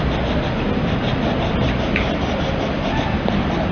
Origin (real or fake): fake